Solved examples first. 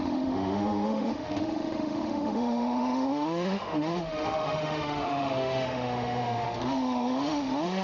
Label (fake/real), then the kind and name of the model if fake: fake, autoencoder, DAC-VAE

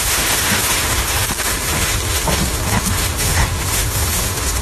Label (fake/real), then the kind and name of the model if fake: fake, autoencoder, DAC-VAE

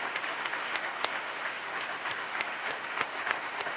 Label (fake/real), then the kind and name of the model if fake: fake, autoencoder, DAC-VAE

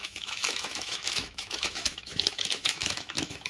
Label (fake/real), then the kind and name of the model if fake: fake, autoencoder, DAC-VAE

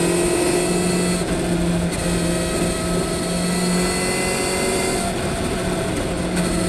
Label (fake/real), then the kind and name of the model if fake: real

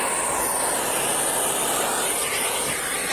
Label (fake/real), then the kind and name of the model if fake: real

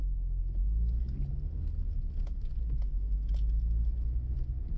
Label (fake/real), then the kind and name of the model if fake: real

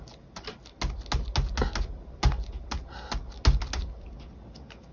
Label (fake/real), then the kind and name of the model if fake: real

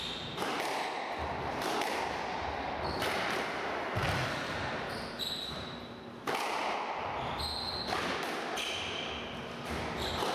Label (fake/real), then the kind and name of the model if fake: real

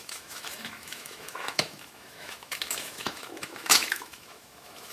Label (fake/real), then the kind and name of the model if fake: fake, autoencoder, DAC-VAE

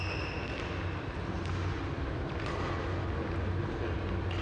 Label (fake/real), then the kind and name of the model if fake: real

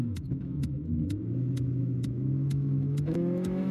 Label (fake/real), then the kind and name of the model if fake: fake, autoencoder, DAC-VAE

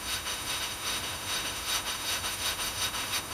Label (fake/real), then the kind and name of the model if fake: fake, autoencoder, DAC-VAE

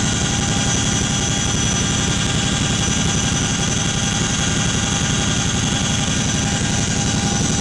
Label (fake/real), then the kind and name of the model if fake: real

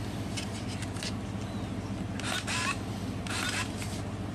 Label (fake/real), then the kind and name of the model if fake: real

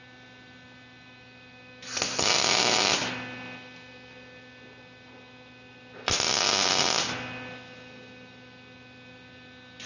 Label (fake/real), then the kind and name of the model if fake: real